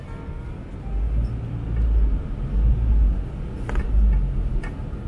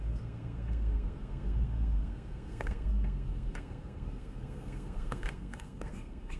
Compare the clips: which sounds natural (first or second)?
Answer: first